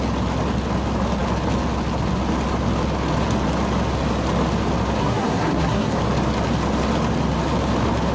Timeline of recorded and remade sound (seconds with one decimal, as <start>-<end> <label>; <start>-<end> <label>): 0.0-5.0 recorded; 5.0-6.0 remade; 6.0-8.1 recorded